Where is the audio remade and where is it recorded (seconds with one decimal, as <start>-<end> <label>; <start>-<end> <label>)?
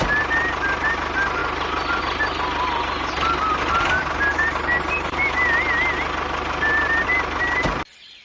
0.0-8.2 recorded